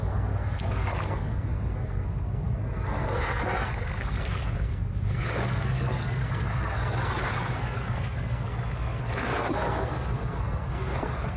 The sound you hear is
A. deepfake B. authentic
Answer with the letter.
A